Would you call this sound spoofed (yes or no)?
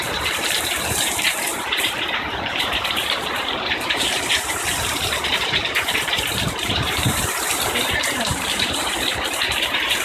yes